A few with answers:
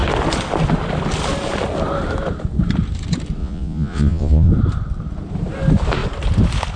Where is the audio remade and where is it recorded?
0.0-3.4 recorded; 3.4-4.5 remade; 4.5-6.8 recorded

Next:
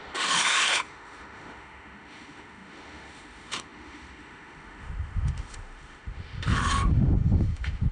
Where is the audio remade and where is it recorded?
0.0-7.9 remade

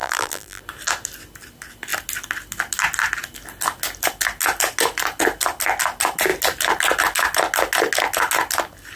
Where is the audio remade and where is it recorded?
0.0-0.6 remade; 0.6-9.0 recorded

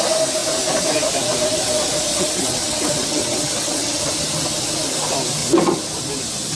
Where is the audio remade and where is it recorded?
0.0-2.1 recorded; 2.1-4.1 remade; 4.1-6.5 recorded

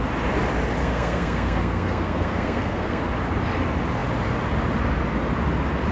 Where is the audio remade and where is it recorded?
0.0-0.8 recorded; 0.8-3.0 remade; 3.0-5.9 recorded

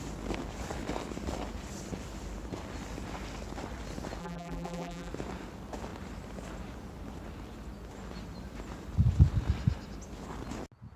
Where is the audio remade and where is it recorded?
0.0-4.2 recorded; 4.2-5.1 remade; 5.1-11.0 recorded

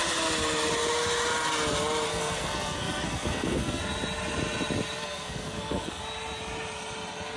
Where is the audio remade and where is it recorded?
0.0-2.1 recorded; 2.1-3.8 remade; 3.8-5.0 recorded; 5.0-6.0 remade; 6.0-7.4 recorded

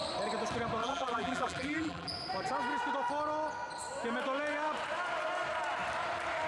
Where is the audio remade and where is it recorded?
0.0-0.8 recorded; 0.8-2.1 remade; 2.1-6.5 recorded